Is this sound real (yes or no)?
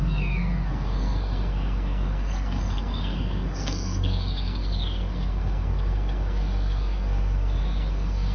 no